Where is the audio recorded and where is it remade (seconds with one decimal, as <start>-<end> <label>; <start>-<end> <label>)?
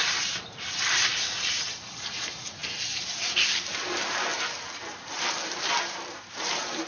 0.0-6.9 remade